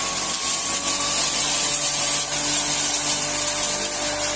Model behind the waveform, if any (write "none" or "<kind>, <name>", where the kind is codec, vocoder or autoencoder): none